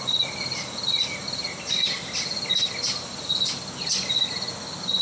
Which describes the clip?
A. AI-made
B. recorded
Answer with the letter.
B